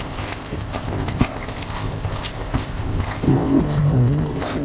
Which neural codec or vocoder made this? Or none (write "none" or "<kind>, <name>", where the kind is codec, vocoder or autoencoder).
codec, ZipCodec